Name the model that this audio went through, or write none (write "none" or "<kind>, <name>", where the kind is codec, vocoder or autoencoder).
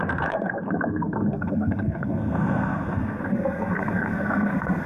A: codec, SNAC